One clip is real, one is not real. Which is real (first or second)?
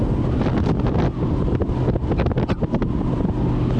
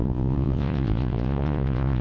first